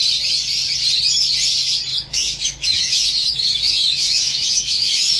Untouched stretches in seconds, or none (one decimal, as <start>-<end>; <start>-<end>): 0.0-1.9